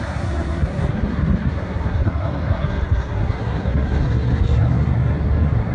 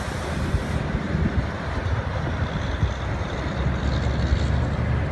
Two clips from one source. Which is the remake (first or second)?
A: first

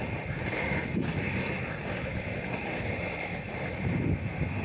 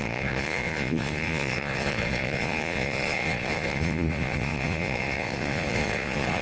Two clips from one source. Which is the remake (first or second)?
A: second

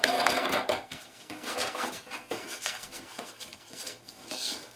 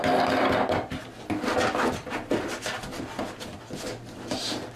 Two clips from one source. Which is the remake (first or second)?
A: first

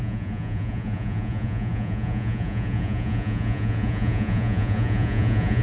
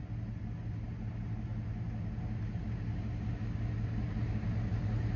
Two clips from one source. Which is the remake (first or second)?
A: first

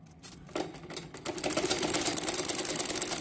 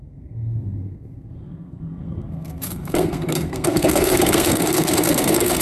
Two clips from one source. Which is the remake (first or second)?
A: second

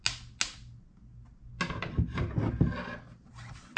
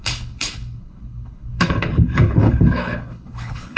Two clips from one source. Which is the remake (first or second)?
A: second